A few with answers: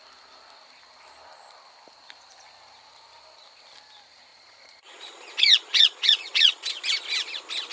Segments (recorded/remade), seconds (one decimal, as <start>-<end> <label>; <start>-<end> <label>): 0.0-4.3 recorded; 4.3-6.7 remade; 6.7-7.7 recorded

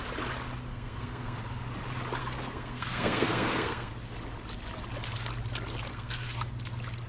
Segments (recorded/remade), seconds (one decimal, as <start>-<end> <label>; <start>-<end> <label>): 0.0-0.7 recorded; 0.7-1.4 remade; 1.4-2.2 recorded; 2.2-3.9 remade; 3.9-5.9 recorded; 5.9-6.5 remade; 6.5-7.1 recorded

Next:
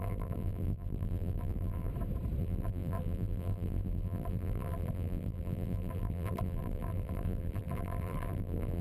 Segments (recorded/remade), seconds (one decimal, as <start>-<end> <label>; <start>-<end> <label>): 0.0-1.9 remade; 1.9-2.4 recorded; 2.4-8.8 remade

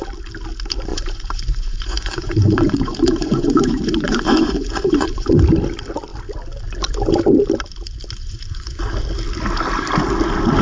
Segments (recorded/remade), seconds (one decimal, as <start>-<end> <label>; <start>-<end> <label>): 0.0-0.9 recorded; 0.9-5.4 remade; 5.4-8.2 recorded; 8.2-8.8 remade; 8.8-10.6 recorded

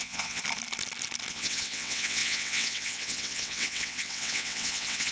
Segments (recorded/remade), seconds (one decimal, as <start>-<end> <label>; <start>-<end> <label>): 0.0-0.4 remade; 0.4-1.3 recorded; 1.3-5.1 remade

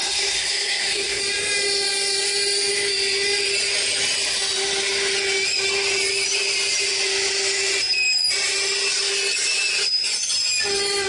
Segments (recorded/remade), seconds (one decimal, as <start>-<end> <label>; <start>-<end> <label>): 0.0-1.2 remade; 1.2-11.1 recorded

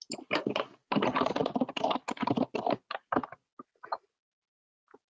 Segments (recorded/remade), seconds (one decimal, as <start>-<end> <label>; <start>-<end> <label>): 0.0-5.2 recorded

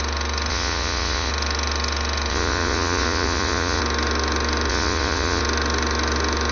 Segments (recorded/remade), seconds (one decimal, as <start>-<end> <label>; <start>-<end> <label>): 0.0-0.5 recorded; 0.5-1.3 remade; 1.3-2.3 recorded; 2.3-3.8 remade; 3.8-4.7 recorded; 4.7-5.4 remade; 5.4-6.5 recorded